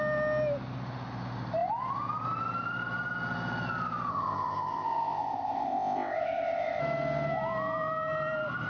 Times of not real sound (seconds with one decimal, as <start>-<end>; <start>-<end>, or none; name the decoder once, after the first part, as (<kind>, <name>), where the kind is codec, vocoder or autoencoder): 4.1-6.8 (codec, ZipCodec)